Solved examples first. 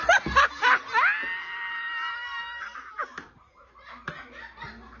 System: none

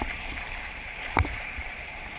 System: vocoder, BigVGAN v2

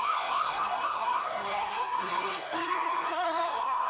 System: codec, SNAC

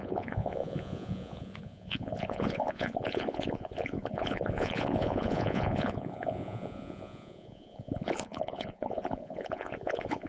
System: vocoder, Vocos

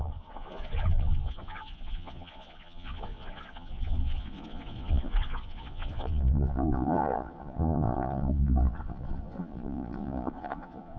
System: vocoder, Vocos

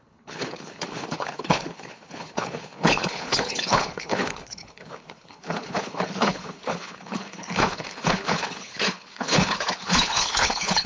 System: codec, HILCodec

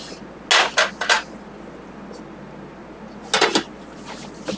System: none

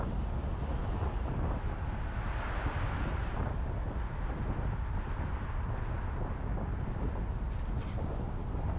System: none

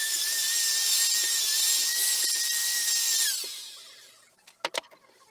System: none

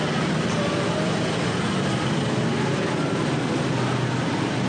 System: none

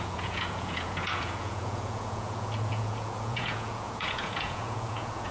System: vocoder, Vocos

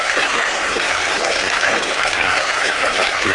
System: codec, SNAC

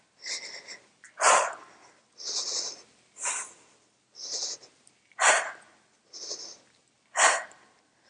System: none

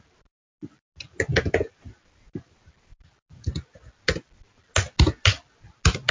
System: none